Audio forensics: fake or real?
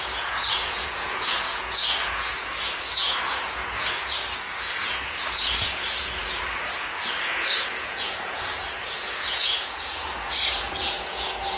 fake